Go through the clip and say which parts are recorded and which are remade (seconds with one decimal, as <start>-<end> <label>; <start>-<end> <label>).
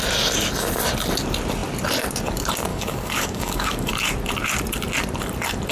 0.0-2.7 recorded; 2.7-3.9 remade; 3.9-5.7 recorded